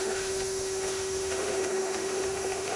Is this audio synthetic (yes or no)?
yes